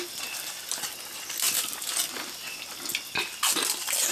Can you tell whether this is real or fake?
real